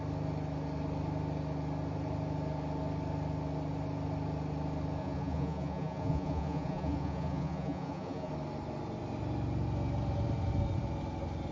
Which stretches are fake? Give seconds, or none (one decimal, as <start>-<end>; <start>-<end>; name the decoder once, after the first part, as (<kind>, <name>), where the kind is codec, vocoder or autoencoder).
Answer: 5.0-8.3 (vocoder, Vocos)